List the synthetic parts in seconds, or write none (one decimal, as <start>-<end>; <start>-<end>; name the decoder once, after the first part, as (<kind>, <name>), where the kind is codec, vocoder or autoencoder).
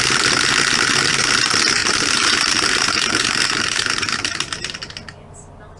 1.8-4.9 (vocoder, BigVGAN v2)